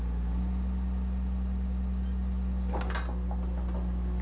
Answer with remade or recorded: recorded